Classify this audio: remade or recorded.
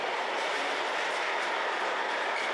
recorded